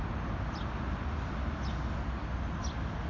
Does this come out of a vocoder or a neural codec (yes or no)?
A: no